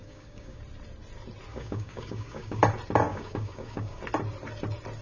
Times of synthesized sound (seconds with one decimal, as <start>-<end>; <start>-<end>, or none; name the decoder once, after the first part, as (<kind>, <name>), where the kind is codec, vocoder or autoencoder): 0.0-0.6 (codec, DAC); 1.5-2.6; 3.1-4.0